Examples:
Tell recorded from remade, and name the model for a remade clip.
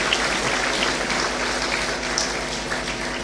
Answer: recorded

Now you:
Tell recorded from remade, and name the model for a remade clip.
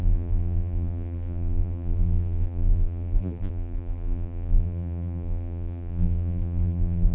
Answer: remade, vocoder, BigVGAN v2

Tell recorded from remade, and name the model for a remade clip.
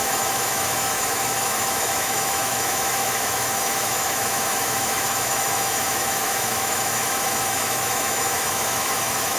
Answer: remade, autoencoder, DAC-VAE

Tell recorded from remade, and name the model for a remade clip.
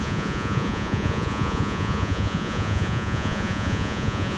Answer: remade, vocoder, Vocos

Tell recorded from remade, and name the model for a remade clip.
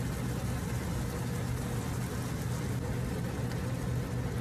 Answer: recorded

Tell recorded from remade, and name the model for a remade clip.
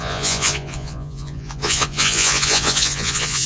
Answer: remade, vocoder, Vocos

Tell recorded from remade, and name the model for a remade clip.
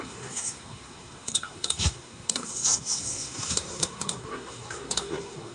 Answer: remade, codec, SNAC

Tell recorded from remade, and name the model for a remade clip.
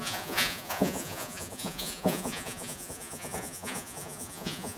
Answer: remade, vocoder, Vocos